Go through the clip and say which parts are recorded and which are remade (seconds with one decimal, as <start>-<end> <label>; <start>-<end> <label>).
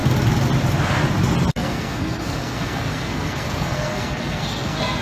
0.0-1.5 recorded; 1.5-5.0 remade